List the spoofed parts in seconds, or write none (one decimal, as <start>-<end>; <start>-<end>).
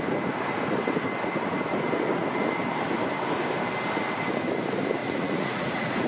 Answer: 5.0-6.1